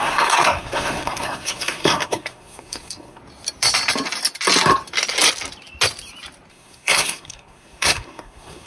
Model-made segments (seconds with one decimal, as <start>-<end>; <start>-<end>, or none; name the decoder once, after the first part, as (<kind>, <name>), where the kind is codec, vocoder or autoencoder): 0.0-3.2 (codec, SNAC); 6.5-8.7